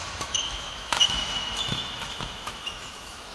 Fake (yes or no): yes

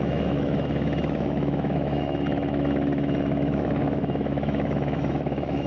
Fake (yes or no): yes